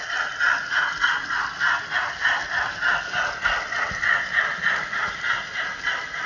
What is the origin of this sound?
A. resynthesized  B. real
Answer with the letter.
B